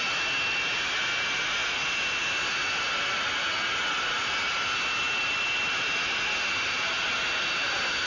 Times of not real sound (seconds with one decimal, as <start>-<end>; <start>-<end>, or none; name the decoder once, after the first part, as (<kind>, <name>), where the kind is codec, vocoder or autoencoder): none